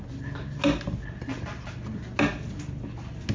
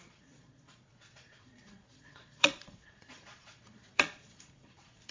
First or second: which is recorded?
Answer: first